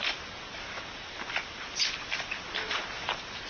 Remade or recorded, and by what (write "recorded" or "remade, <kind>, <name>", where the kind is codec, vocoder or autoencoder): recorded